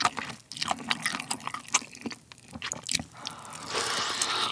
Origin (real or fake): real